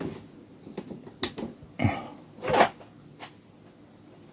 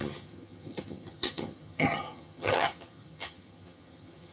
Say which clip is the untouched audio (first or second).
first